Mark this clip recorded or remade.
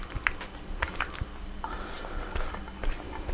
recorded